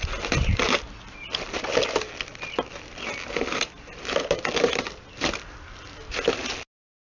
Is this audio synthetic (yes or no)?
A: no